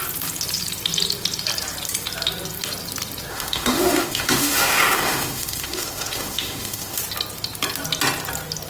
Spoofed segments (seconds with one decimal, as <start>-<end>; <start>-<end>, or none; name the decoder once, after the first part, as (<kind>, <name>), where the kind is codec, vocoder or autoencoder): 3.3-7.0 (autoencoder, DAC-VAE)